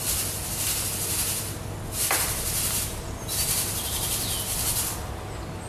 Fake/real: real